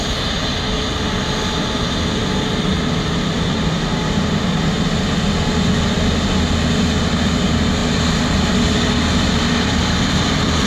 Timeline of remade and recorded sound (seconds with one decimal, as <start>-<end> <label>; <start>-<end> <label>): 0.0-10.7 recorded